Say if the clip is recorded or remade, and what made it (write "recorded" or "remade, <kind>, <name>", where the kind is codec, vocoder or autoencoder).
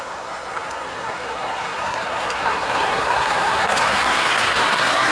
remade, codec, SNAC